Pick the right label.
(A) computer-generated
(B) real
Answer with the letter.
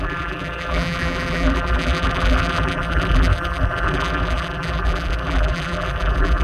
A